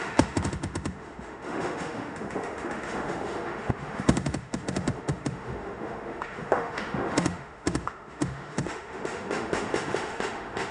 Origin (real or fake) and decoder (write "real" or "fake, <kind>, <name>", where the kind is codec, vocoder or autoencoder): fake, autoencoder, DAC-VAE